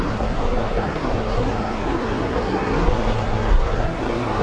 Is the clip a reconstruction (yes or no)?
yes